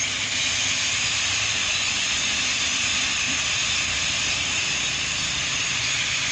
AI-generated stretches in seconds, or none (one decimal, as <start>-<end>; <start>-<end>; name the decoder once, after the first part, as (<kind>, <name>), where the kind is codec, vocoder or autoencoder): 1.6-2.1 (vocoder, Vocos); 5.5-6.3